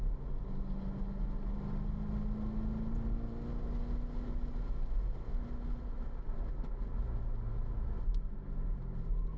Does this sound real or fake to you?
real